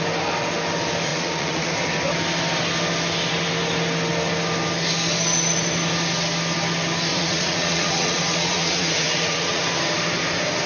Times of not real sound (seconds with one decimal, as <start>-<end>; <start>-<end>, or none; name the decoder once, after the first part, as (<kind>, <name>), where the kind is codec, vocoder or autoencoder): 1.1-1.7 (vocoder, Vocos); 7.1-9.6